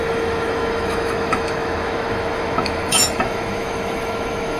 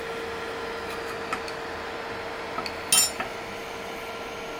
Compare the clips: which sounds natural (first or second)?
second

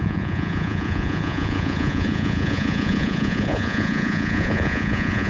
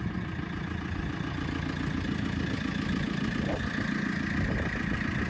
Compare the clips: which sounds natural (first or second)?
second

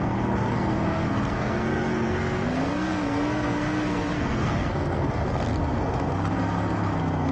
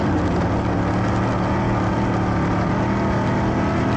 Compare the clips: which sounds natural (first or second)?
second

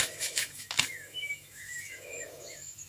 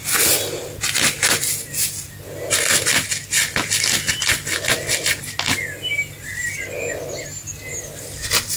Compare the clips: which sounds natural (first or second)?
second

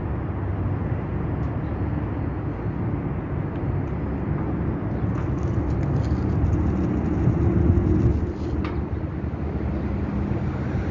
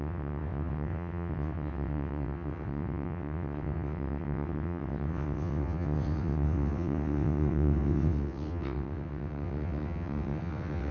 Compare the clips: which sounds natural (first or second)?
first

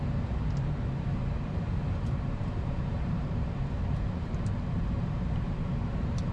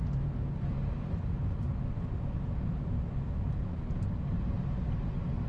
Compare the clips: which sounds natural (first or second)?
second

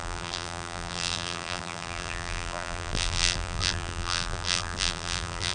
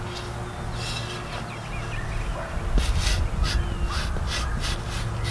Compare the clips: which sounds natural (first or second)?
second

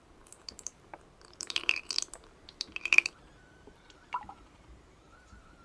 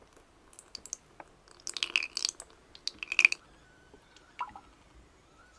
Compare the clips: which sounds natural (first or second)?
second